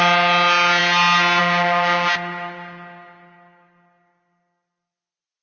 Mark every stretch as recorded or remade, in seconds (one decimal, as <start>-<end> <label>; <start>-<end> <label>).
0.0-5.4 recorded